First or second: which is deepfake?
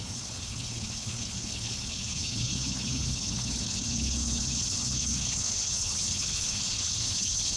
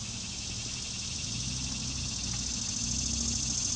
first